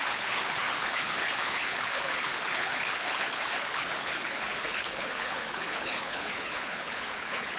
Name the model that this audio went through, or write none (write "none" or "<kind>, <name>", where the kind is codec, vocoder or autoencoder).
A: codec, HILCodec